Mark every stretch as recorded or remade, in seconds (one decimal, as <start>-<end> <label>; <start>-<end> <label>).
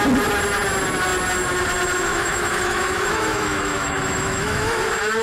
0.0-2.1 recorded; 2.1-4.8 remade; 4.8-5.2 recorded